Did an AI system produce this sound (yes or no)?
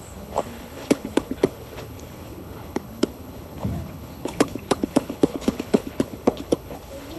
yes